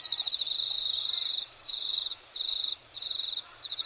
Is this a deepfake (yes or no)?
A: yes